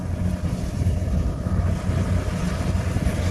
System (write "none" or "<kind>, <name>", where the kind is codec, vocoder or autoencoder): none